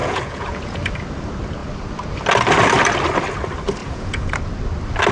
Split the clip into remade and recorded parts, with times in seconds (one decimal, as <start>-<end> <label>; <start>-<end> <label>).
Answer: 0.0-0.8 remade; 0.8-3.8 recorded; 3.8-4.3 remade; 4.3-5.1 recorded